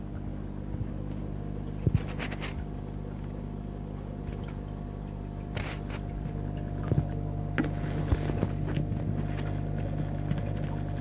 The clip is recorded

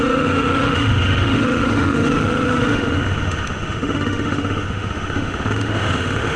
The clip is remade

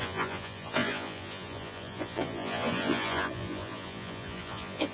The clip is remade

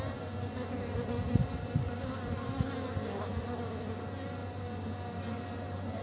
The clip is recorded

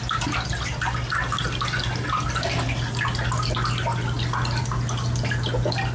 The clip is recorded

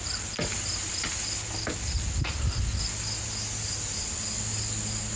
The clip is recorded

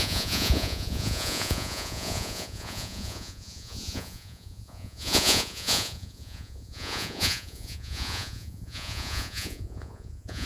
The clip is remade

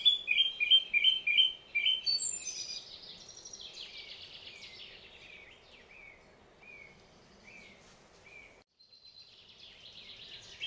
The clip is recorded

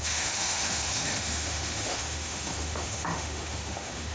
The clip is remade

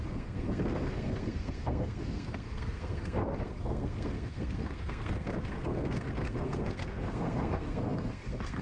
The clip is remade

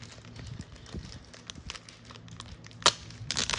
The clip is recorded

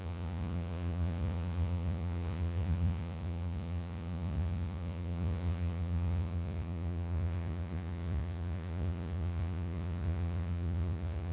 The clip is remade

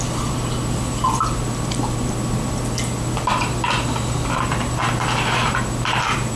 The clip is remade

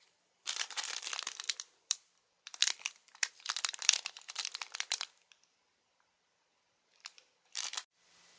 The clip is remade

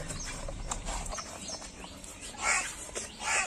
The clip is remade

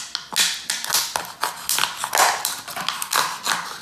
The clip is recorded